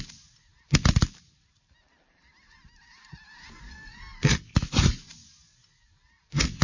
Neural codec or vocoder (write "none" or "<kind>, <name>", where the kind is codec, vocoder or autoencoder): none